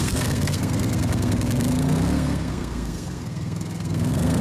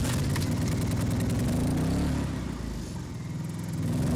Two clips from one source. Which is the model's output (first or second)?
first